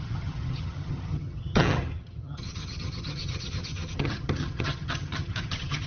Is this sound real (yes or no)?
no